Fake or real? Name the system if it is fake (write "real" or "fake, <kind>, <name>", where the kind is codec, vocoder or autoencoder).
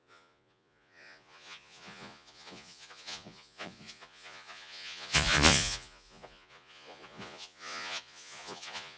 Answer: fake, vocoder, Vocos